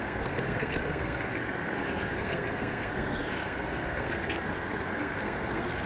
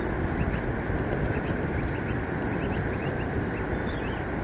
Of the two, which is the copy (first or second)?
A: first